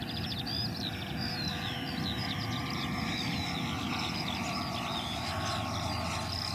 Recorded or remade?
recorded